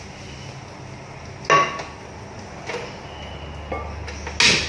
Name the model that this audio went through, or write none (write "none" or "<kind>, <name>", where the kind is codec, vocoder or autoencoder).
none